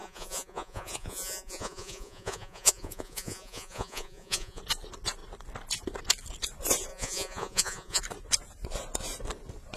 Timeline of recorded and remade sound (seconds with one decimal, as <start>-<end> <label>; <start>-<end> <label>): 0.0-4.6 remade; 4.6-6.9 recorded; 6.9-8.0 remade; 8.0-9.8 recorded

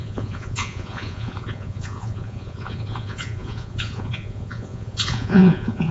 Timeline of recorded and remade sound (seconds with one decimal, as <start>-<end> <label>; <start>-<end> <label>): 0.0-5.9 remade

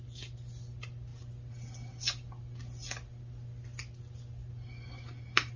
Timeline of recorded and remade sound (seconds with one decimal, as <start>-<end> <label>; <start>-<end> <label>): 0.0-5.6 recorded

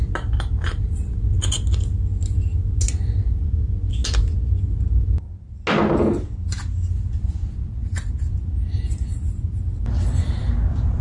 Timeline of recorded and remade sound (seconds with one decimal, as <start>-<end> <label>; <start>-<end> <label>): 0.0-11.0 recorded

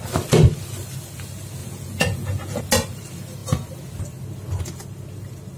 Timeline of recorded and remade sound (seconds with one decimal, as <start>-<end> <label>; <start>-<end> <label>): 0.0-1.6 recorded; 1.6-2.6 remade; 2.6-5.6 recorded

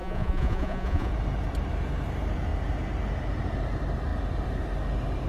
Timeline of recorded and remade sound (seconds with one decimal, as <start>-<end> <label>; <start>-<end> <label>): 0.0-1.1 remade; 1.1-5.3 recorded